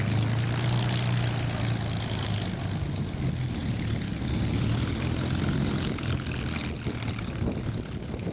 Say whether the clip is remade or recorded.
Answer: recorded